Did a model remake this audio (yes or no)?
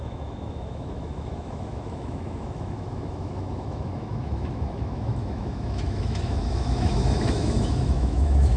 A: yes